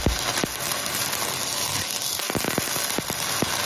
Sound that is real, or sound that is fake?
real